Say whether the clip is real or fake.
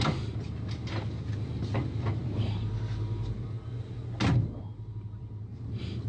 real